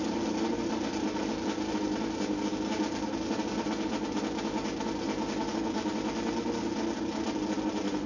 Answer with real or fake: real